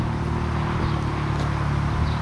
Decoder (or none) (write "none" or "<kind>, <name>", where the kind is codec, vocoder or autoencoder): none